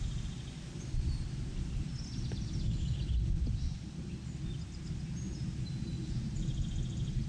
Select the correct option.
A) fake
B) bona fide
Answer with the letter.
B